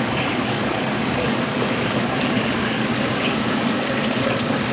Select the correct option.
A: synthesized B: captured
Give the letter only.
A